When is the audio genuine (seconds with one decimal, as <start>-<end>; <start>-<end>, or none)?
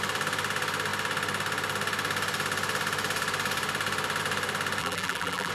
0.0-4.8